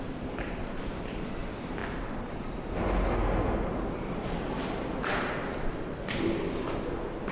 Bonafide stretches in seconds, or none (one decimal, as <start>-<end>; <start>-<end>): 0.0-7.3